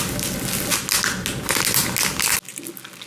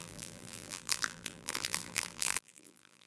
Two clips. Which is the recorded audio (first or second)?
first